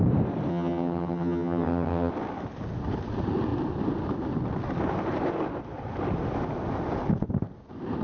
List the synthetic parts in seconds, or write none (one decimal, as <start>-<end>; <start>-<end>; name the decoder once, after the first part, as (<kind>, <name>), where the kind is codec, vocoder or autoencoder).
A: 0.5-2.1 (vocoder, HiFi-GAN)

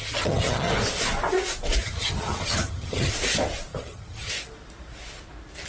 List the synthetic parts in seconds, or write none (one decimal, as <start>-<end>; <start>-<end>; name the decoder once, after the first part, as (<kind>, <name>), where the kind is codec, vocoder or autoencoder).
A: 0.0-0.7 (vocoder, HiFi-GAN); 1.8-3.1; 3.7-4.3

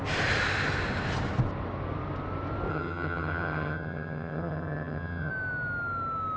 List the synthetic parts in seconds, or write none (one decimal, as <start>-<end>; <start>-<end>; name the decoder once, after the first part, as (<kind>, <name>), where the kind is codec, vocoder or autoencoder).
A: 2.7-5.3 (vocoder, HiFi-GAN)

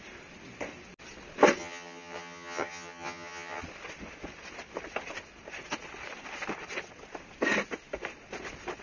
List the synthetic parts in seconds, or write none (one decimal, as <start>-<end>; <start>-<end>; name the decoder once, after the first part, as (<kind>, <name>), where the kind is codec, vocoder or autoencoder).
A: 1.6-3.6 (vocoder, HiFi-GAN)

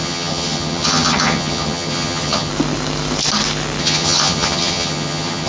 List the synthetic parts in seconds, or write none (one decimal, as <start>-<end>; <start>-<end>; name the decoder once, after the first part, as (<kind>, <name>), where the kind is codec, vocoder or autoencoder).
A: 0.0-2.5 (vocoder, HiFi-GAN); 3.8-5.5

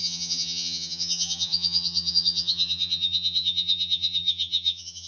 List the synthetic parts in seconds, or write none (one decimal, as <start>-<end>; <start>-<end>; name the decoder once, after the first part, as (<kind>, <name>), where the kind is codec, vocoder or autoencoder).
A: 0.0-5.1 (vocoder, HiFi-GAN)